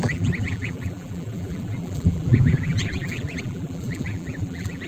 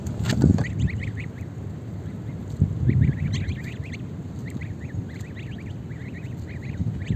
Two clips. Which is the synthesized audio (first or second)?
first